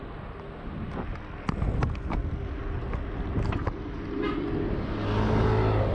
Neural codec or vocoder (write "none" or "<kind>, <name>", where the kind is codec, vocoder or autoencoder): none